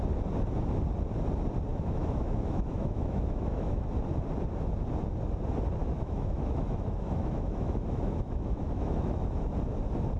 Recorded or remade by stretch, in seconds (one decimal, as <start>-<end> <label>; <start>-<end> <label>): 0.0-1.7 recorded; 1.7-3.9 remade; 3.9-5.8 recorded; 5.8-9.5 remade; 9.5-10.2 recorded

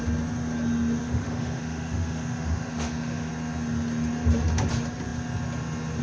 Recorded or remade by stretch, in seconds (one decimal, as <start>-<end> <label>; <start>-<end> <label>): 0.0-1.0 recorded; 1.0-3.3 remade; 3.3-6.0 recorded

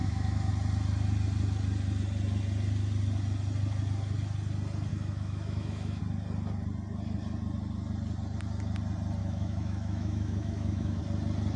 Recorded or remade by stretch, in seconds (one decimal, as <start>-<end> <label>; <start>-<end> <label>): 0.0-0.5 remade; 0.5-4.9 recorded; 4.9-6.0 remade; 6.0-9.2 recorded; 9.2-11.0 remade; 11.0-11.6 recorded

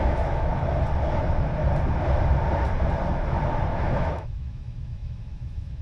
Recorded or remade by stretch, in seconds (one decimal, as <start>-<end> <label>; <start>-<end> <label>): 0.0-0.5 remade; 0.5-3.7 recorded; 3.7-5.8 remade

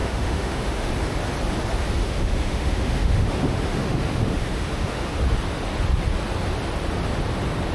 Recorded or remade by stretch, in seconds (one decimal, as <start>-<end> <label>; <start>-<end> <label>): 0.0-0.9 remade; 0.9-2.0 recorded; 2.0-5.2 remade; 5.2-7.7 recorded

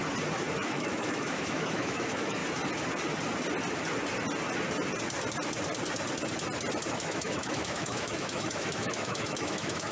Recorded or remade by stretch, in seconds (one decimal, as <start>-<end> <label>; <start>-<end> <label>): 0.0-0.6 recorded; 0.6-2.4 remade; 2.4-6.9 recorded; 6.9-9.9 remade

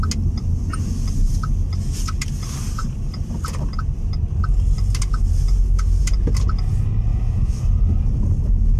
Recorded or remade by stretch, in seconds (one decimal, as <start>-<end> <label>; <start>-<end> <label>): 0.0-7.1 recorded; 7.1-7.6 remade; 7.6-8.8 recorded